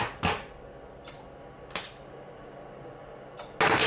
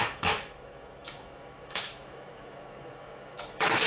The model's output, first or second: second